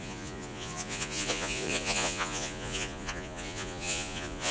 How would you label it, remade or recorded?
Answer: remade